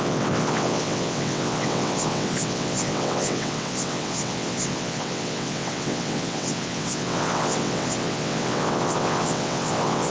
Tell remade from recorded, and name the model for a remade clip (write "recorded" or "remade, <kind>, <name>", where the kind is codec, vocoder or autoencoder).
remade, vocoder, WaveNeXt